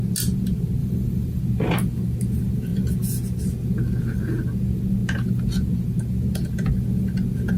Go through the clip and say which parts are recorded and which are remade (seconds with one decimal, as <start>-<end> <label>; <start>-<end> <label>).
0.0-0.8 recorded; 0.8-1.4 remade; 1.4-7.6 recorded